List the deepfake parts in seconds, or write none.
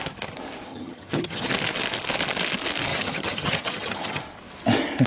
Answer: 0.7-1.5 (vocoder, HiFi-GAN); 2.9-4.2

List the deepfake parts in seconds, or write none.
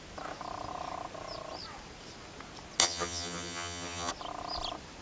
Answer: 2.8-4.1 (vocoder, HiFi-GAN)